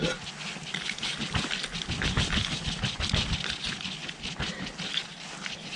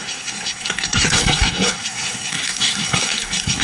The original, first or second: first